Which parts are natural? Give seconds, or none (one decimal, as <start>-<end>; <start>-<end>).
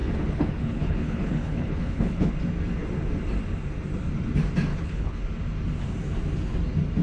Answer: 2.3-4.7; 5.2-7.0